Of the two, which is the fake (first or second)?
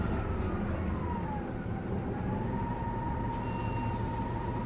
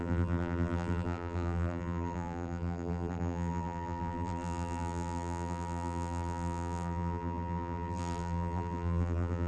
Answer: second